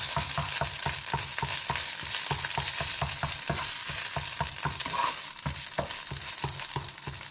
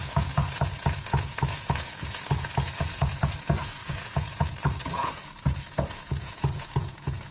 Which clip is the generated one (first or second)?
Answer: second